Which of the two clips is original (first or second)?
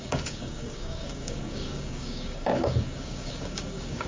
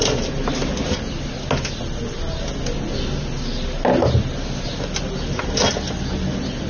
second